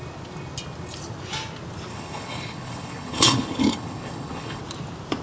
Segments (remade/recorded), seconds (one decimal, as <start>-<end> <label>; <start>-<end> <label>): 0.0-1.9 recorded; 1.9-4.6 remade; 4.6-5.2 recorded